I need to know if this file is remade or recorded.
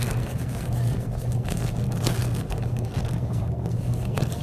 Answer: remade